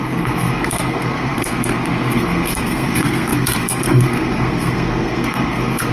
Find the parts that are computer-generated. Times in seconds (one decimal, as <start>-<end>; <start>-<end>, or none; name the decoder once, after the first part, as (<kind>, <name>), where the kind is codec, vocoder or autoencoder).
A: 0.0-5.9 (codec, SNAC)